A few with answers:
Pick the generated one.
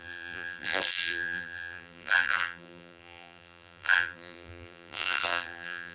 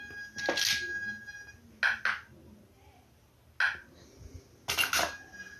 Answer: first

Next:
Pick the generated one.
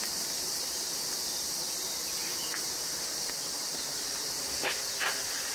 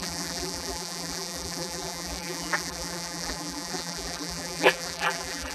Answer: second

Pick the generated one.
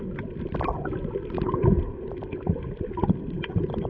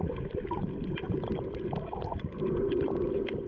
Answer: second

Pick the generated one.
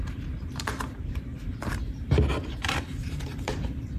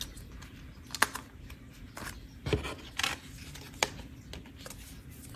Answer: first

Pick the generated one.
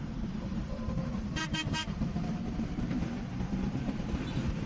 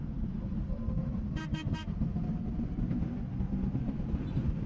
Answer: first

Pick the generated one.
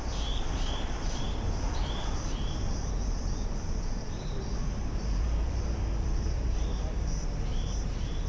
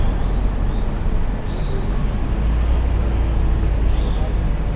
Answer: first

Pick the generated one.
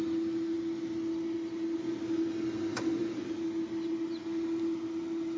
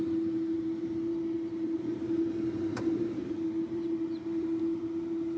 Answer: second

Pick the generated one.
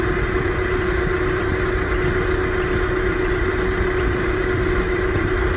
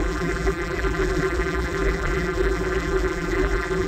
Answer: second